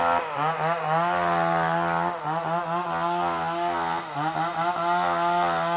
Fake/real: real